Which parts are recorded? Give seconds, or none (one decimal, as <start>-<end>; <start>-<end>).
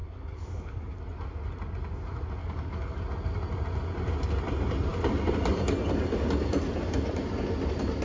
1.0-2.4; 3.0-8.0